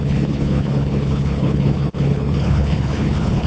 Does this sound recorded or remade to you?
remade